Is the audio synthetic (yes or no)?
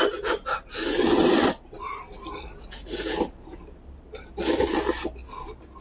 no